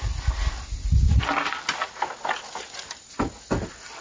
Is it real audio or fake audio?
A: real